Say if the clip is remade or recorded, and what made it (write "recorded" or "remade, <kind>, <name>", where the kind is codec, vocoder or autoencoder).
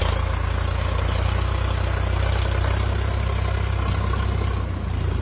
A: recorded